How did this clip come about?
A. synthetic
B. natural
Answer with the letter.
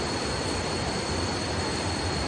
B